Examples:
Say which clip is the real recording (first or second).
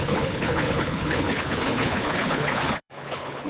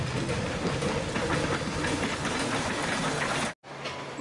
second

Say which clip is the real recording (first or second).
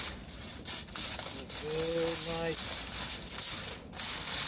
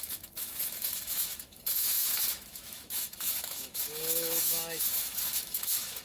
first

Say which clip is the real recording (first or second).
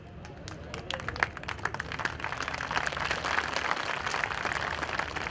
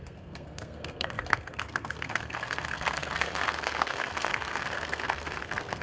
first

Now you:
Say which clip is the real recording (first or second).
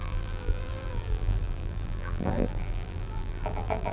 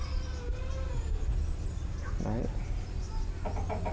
second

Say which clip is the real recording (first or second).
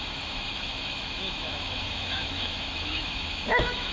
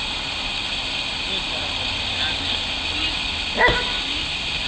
second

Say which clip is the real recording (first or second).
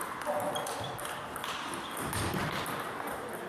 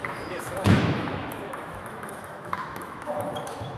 first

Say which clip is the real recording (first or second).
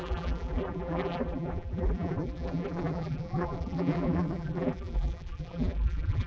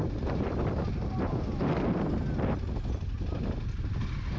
second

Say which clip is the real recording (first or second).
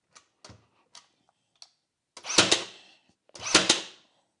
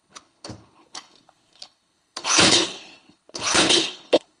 first